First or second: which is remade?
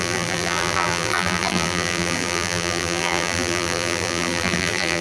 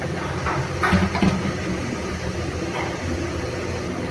first